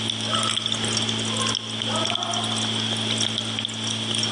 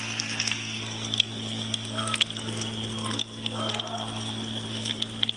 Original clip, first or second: first